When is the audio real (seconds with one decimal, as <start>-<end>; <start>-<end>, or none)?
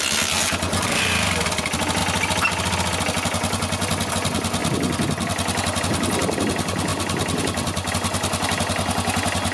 0.0-9.5